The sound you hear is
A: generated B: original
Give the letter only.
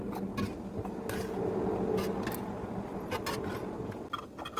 B